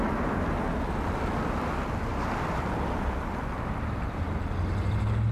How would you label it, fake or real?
real